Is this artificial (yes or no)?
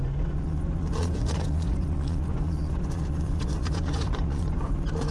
yes